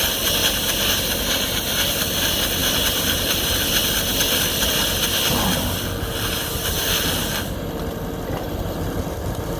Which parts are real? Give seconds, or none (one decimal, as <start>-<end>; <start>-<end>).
0.0-2.6; 3.7-9.6